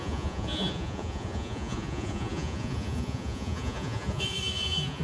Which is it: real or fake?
fake